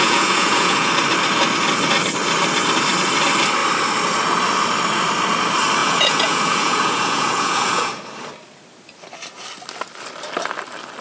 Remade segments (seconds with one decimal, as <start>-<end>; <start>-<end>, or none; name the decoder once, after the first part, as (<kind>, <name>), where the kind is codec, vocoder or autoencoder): 0.0-0.9 (vocoder, Vocos); 5.8-8.0